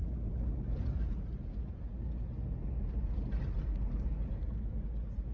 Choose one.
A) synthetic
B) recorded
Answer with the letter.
B